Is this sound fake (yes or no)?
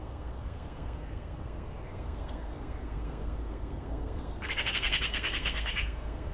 yes